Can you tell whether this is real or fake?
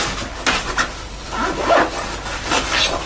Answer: real